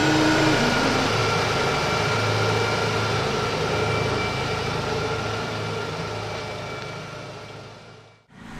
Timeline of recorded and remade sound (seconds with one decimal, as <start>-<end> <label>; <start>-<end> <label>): 0.0-8.6 recorded